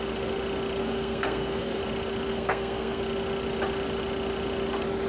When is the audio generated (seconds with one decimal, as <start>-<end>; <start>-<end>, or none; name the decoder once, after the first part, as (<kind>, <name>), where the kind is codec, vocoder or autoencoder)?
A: 0.8-1.8 (codec, SNAC); 2.3-3.0